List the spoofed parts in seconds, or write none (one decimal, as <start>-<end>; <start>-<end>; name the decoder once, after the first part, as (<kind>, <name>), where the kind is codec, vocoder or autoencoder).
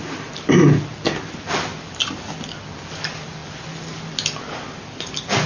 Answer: none